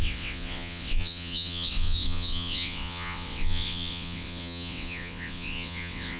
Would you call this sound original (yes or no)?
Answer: no